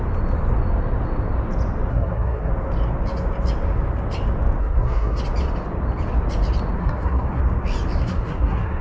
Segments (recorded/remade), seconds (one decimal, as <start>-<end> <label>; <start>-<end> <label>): 0.0-1.9 recorded; 1.9-2.5 remade; 2.5-4.6 recorded; 4.6-5.2 remade; 5.2-6.8 recorded; 6.8-7.4 remade; 7.4-8.0 recorded; 8.0-8.8 remade

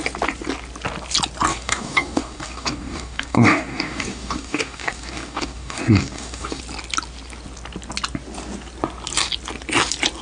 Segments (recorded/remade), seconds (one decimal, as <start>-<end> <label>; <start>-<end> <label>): 0.0-1.5 recorded; 1.5-6.6 remade; 6.6-10.2 recorded

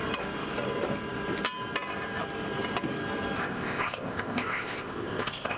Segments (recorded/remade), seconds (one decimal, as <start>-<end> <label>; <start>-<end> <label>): 0.0-3.4 recorded; 3.4-5.6 remade

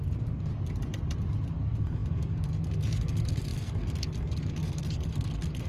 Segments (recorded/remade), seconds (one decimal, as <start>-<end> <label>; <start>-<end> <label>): 0.0-0.5 remade; 0.5-1.5 recorded; 1.5-5.7 remade

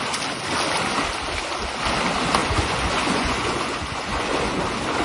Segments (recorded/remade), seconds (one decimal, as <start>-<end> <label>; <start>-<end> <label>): 0.0-2.4 recorded; 2.4-4.6 remade; 4.6-5.0 recorded

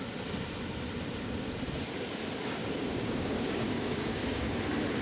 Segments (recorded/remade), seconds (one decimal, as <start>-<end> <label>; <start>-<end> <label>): 0.0-2.6 recorded; 2.6-4.5 remade; 4.5-5.0 recorded

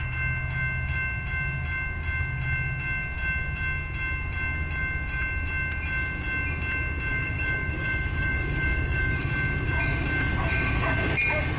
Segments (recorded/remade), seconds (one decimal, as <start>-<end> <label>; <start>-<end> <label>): 0.0-7.1 recorded; 7.1-9.2 remade; 9.2-11.6 recorded